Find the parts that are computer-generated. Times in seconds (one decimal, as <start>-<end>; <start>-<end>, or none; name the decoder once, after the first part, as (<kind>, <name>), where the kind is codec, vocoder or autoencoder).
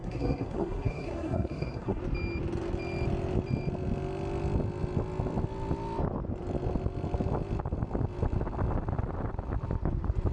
0.0-2.0 (codec, SNAC)